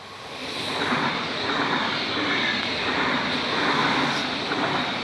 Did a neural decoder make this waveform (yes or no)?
no